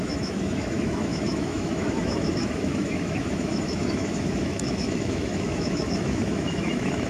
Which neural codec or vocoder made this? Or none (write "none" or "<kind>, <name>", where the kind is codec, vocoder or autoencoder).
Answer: autoencoder, DAC-VAE